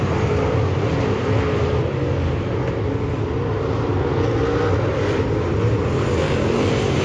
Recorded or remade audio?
recorded